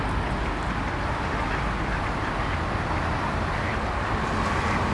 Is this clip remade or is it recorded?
recorded